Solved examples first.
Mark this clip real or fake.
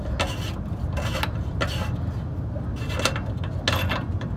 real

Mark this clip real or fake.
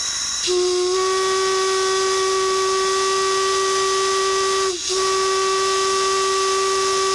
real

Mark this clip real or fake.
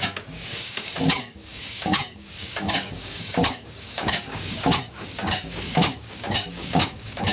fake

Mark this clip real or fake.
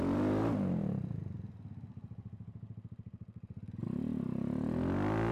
real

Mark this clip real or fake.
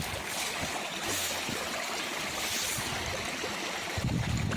real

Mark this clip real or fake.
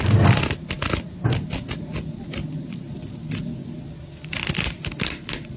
real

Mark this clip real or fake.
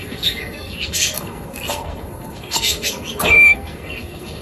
fake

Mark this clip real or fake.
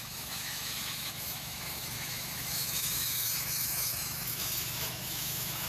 fake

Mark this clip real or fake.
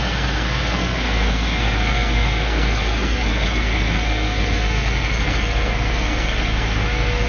fake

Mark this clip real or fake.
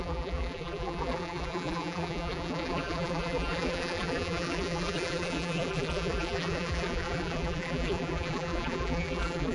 fake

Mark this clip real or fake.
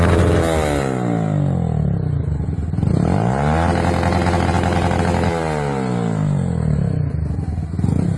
real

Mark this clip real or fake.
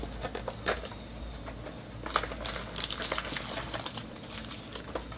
real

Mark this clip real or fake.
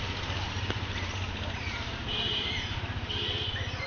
fake